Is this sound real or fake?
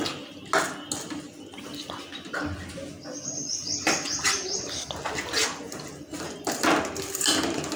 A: real